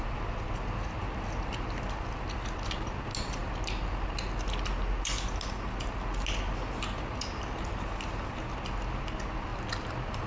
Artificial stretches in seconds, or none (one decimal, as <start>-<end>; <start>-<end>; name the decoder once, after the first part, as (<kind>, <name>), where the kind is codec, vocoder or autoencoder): none